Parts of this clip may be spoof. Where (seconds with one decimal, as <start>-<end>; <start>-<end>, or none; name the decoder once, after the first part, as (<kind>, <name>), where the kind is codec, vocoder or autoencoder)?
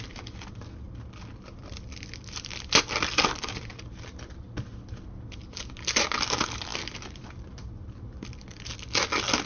1.3-3.7 (vocoder, BigVGAN v2); 6.7-8.9